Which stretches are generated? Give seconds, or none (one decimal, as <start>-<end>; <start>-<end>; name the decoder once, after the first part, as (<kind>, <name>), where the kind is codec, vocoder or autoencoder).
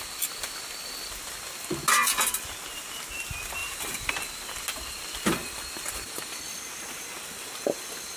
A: 3.6-4.1 (vocoder, BigVGAN v2); 5.4-6.4